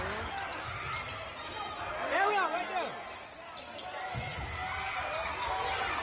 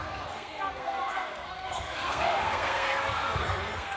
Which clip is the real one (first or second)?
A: first